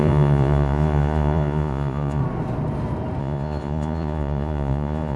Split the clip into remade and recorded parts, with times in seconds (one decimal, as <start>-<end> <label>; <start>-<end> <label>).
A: 0.0-2.2 remade; 2.2-3.2 recorded; 3.2-5.2 remade